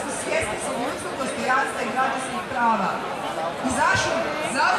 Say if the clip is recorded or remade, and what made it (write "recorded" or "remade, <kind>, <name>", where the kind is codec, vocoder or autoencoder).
recorded